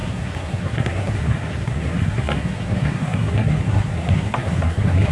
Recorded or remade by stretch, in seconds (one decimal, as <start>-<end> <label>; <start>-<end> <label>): 0.0-5.1 remade